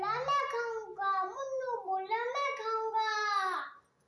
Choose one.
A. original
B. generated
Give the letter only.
A